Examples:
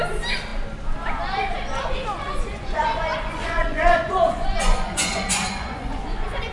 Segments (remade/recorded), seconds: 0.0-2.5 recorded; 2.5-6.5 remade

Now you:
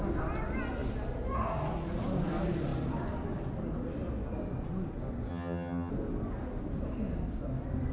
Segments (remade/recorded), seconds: 0.0-5.3 recorded; 5.3-5.9 remade; 5.9-7.9 recorded